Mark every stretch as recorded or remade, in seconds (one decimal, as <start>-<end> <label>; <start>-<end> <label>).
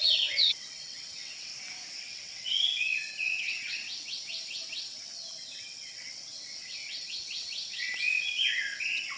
0.0-1.5 remade; 1.5-2.0 recorded; 2.0-9.2 remade